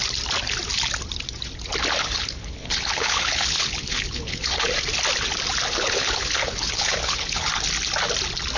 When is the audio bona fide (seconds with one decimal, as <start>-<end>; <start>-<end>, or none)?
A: 0.0-2.0; 4.7-5.7; 7.5-8.6